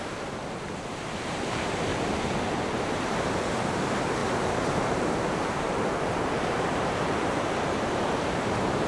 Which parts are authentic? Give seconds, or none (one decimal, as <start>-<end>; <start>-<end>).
1.9-3.7